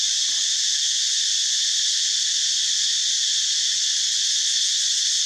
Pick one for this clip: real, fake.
real